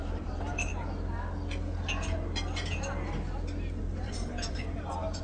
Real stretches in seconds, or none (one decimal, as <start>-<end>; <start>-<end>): 0.7-3.8